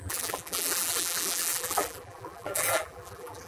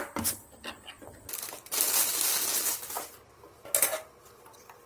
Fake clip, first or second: first